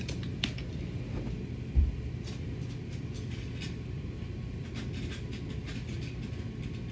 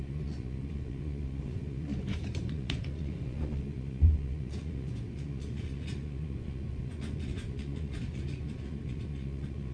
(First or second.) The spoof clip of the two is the second